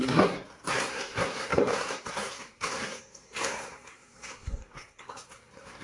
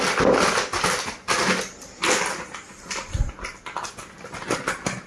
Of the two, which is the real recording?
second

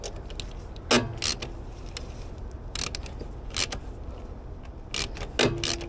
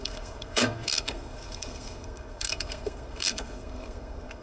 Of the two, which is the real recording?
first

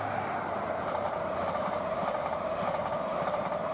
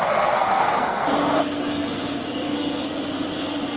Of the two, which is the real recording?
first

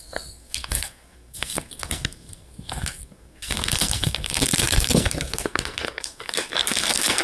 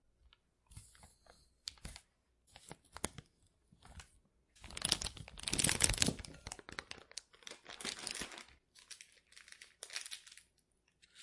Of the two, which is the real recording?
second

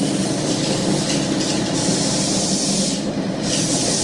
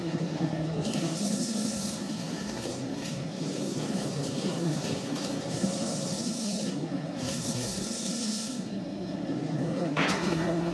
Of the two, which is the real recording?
first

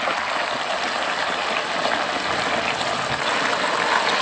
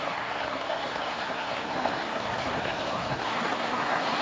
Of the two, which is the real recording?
first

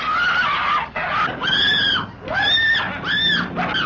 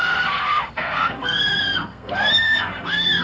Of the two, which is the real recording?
first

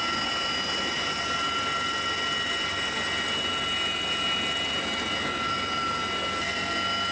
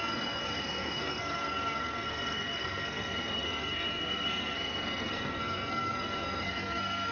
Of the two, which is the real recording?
first